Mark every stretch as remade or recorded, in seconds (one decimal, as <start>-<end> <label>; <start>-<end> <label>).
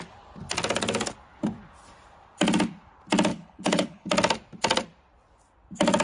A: 0.0-3.3 recorded; 3.3-4.1 remade; 4.1-6.0 recorded